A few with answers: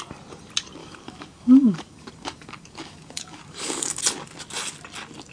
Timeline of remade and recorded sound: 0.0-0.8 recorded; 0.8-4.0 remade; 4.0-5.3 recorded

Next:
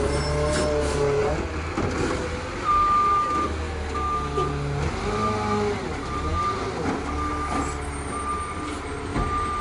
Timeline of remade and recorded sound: 0.0-9.6 recorded